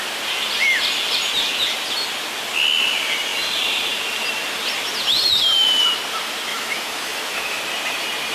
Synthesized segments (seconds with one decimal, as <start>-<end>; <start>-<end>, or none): 6.5-7.6